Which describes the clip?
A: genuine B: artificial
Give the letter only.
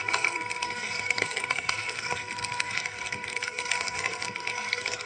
B